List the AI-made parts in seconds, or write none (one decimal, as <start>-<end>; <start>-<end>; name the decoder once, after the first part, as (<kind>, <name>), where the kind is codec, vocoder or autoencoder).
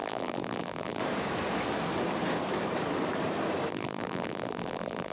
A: 0.0-1.0 (vocoder, BigVGAN v2); 3.7-5.1